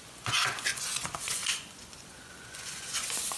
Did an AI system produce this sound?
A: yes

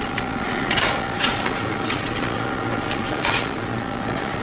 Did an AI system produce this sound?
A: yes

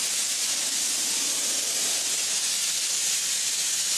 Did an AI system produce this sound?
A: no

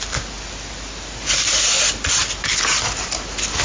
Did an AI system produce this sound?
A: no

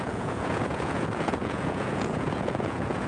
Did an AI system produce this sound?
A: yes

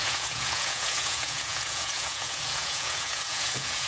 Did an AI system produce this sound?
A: yes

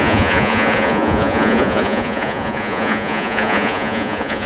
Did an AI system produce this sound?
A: yes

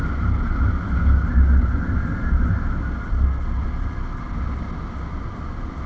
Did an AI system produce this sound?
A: no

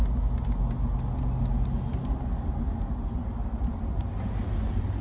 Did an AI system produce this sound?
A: no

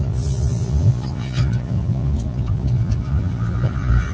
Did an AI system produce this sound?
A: yes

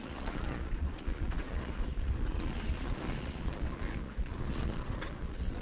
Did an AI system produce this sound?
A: yes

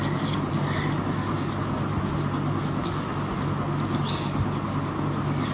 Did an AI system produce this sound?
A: no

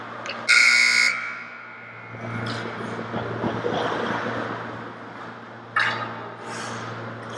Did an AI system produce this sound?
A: no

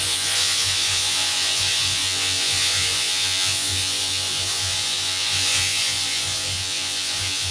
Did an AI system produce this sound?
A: yes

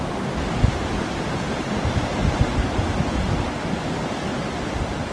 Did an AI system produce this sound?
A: no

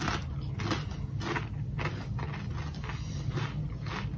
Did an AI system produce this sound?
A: no